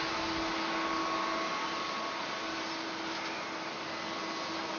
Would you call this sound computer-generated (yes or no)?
no